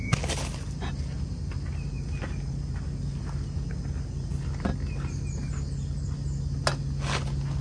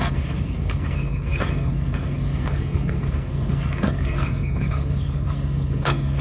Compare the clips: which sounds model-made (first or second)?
second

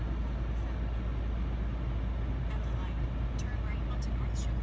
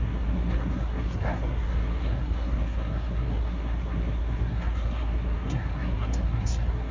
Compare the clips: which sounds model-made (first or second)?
second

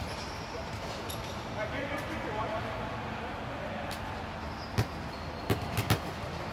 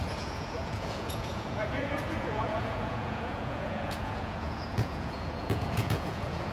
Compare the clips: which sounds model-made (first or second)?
second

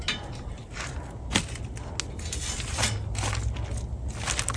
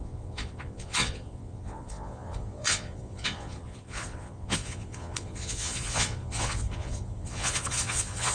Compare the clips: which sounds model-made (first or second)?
second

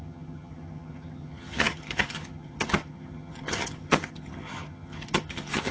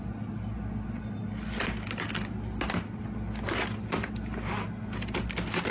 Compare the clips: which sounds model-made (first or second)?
first